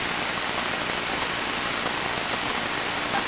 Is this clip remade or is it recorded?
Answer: recorded